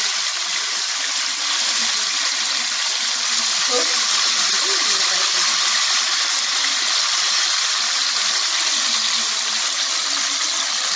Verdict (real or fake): real